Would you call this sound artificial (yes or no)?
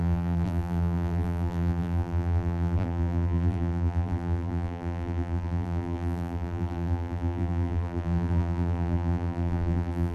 yes